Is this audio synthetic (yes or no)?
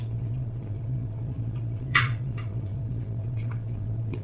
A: yes